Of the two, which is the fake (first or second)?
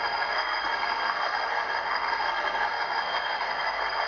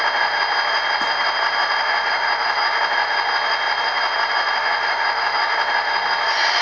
first